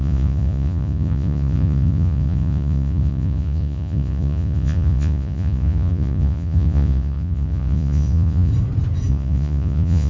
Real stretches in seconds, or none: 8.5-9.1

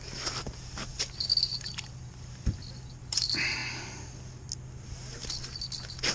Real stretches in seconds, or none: 0.0-6.1

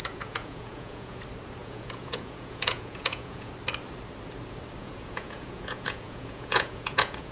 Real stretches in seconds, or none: 1.2-1.6; 3.5-4.8